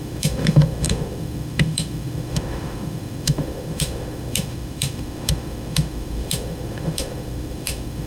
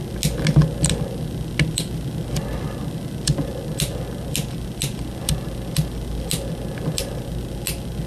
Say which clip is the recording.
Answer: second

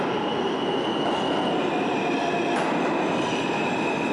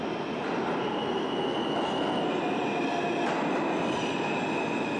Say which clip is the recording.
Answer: second